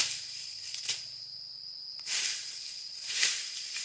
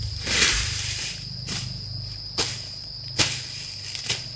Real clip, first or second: second